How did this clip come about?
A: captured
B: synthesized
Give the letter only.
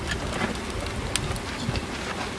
A